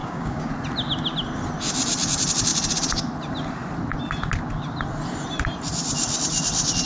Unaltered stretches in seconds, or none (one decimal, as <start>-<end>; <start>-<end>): 0.5-6.9